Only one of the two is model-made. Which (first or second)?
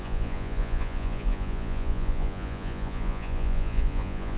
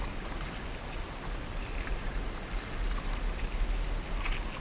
first